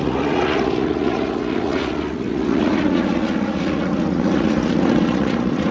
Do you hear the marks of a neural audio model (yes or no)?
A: yes